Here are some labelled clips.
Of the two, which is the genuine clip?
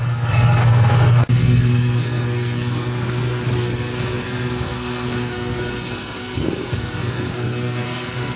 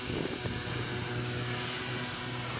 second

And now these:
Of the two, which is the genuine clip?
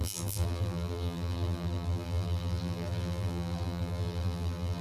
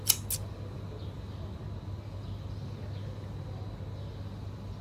second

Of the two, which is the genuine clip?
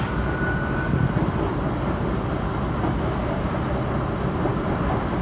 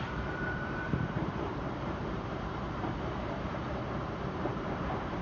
first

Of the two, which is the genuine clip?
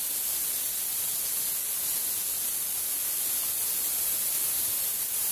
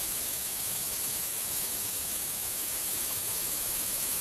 first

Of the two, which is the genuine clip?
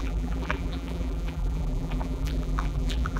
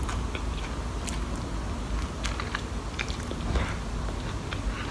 second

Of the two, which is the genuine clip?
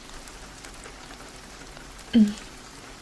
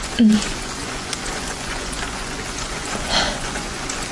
first